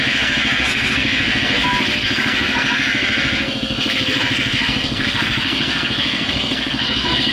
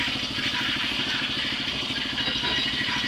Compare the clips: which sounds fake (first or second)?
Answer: first